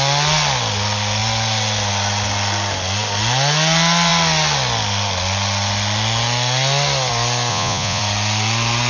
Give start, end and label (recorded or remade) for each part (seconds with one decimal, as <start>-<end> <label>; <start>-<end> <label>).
0.0-7.5 recorded; 7.5-8.0 remade; 8.0-8.9 recorded